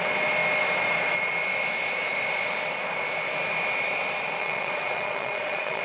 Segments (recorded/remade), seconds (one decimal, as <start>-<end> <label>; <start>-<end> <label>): 0.0-4.4 recorded; 4.4-5.8 remade